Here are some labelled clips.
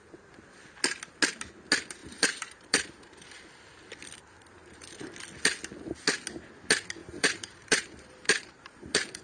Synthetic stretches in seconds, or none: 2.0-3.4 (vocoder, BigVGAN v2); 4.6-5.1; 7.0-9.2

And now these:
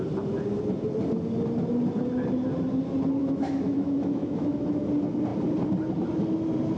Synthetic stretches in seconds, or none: 3.2-4.7 (autoencoder, DAC-VAE)